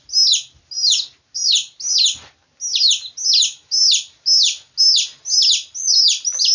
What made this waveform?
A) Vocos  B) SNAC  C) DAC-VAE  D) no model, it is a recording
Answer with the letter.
D